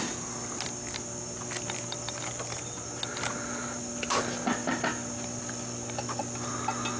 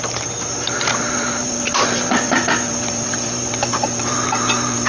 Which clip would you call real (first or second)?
first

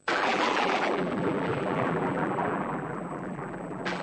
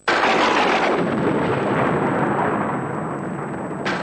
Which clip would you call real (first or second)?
second